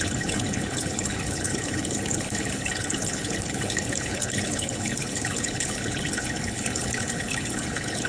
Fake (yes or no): yes